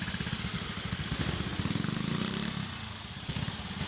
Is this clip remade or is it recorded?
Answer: recorded